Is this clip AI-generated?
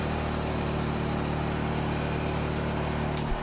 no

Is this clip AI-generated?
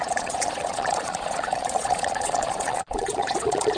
yes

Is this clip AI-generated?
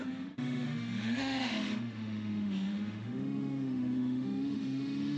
yes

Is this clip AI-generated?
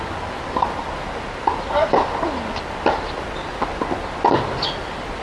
no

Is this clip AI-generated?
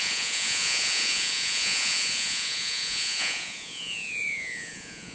yes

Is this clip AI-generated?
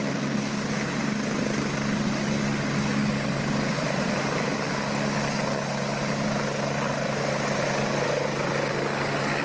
no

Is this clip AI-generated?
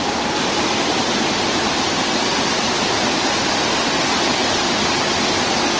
no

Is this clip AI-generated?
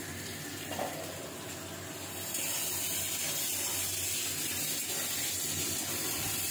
no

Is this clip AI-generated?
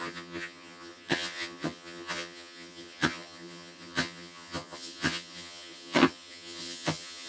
yes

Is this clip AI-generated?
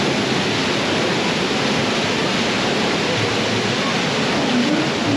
no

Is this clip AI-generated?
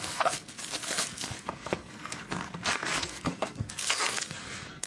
yes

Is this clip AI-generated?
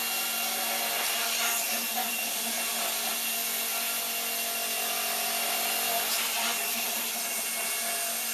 no